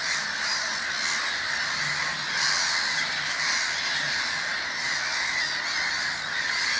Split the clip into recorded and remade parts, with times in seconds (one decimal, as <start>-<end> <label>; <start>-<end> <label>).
0.0-0.7 remade; 0.7-1.8 recorded; 1.8-4.5 remade; 4.5-6.8 recorded